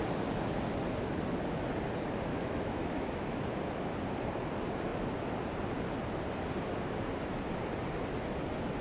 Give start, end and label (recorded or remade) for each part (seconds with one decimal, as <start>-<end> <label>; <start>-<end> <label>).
0.0-2.3 recorded; 2.3-3.4 remade; 3.4-8.8 recorded